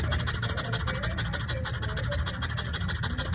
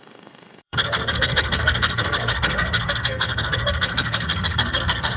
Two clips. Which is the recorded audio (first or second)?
first